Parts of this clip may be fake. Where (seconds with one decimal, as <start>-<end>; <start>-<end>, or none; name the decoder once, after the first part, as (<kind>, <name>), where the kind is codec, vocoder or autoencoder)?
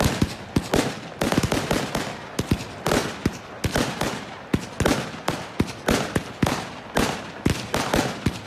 none